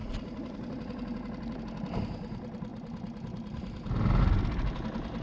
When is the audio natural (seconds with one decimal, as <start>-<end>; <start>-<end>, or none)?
1.6-2.7; 4.2-5.2